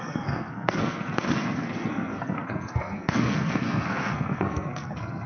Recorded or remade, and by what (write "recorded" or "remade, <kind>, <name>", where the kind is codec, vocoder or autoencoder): remade, codec, SNAC